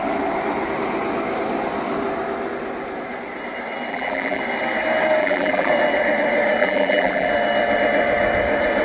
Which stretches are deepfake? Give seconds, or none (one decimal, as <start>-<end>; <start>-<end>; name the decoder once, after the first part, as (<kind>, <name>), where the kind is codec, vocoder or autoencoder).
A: 3.9-4.4 (vocoder, BigVGAN v2); 5.2-5.7; 6.6-7.3